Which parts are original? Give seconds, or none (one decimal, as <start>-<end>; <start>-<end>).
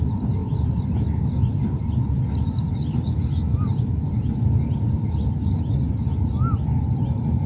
0.0-7.5